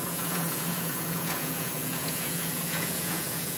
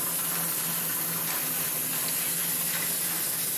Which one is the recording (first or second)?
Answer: second